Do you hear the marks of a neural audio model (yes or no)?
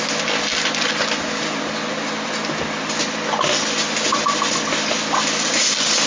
no